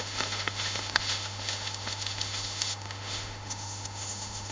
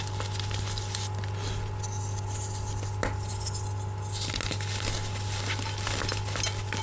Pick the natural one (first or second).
second